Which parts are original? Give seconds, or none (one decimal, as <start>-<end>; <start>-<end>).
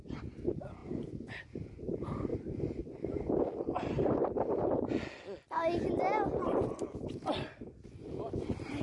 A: 0.0-8.8